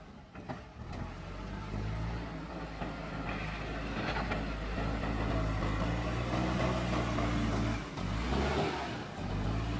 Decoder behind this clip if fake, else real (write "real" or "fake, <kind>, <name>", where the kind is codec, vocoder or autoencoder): real